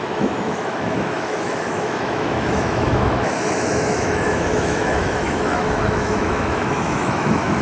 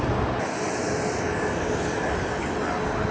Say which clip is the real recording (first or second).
second